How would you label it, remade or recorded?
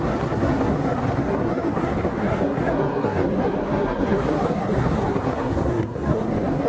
remade